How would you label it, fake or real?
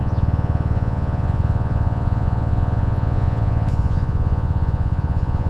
fake